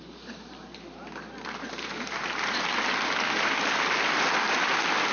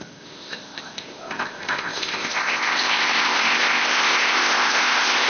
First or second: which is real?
first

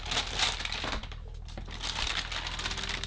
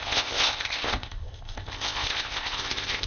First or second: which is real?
first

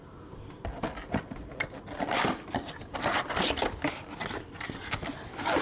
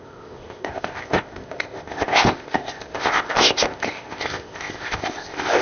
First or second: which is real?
first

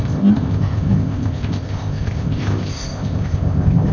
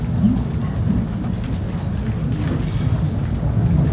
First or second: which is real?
second